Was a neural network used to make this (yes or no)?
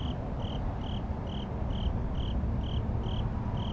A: no